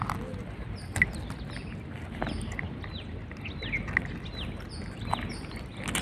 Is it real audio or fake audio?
real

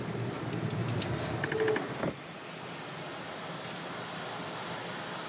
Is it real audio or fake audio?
real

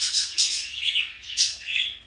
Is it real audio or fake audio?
fake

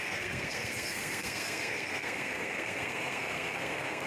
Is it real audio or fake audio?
fake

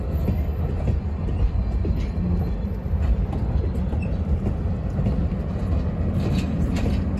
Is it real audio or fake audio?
real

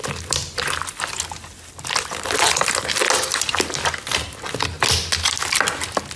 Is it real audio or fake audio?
real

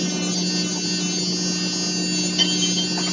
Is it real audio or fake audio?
real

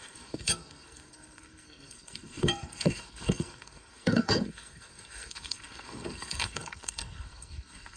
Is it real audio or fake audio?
fake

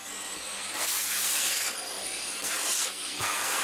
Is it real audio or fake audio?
fake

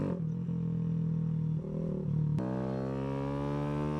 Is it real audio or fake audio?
real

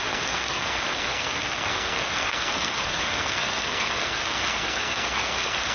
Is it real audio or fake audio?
fake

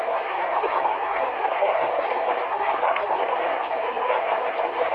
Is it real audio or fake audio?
fake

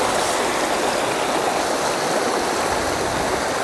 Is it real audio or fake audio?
real